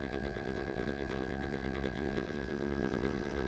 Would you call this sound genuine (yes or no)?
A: no